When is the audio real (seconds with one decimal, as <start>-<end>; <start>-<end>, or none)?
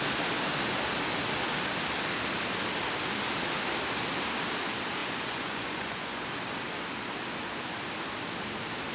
0.0-5.0; 6.2-8.9